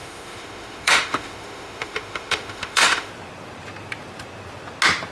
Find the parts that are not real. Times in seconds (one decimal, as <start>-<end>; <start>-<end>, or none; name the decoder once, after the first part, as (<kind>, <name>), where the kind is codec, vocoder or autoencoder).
0.0-3.1 (autoencoder, DAC-VAE)